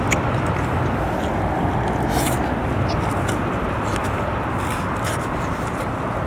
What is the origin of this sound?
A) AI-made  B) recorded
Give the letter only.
B